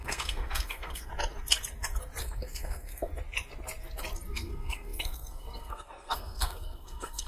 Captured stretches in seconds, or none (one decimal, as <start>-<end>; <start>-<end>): 1.1-2.2; 3.1-4.3